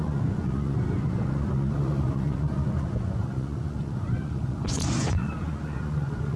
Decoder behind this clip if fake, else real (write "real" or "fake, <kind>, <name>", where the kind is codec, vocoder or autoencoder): fake, vocoder, Vocos